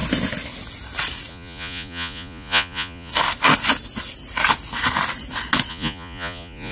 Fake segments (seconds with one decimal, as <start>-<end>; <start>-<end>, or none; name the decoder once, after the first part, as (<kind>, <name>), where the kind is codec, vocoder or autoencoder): 1.3-3.1 (vocoder, Vocos); 5.7-6.7